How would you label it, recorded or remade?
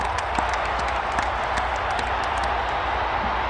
recorded